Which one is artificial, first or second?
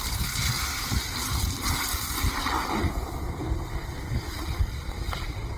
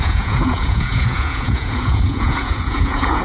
second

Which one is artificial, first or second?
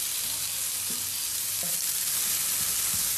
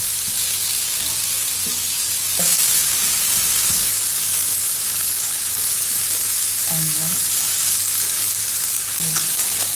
second